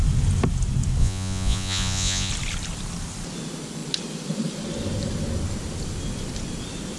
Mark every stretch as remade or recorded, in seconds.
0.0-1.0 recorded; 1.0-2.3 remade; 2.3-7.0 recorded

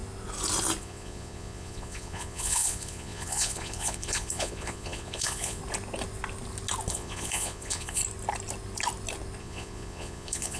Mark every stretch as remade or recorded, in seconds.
0.0-0.8 recorded; 0.8-5.6 remade; 5.6-6.9 recorded; 6.9-8.0 remade; 8.0-9.4 recorded; 9.4-10.6 remade

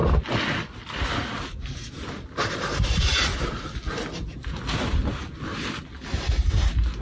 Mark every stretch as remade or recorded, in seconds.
0.0-7.0 recorded